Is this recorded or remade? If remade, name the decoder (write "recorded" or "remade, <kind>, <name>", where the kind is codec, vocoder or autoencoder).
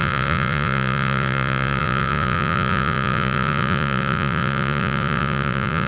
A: remade, vocoder, Vocos